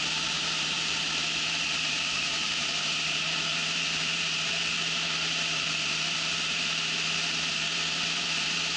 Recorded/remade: remade